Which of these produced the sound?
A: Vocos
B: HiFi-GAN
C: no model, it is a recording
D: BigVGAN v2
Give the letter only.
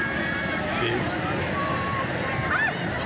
C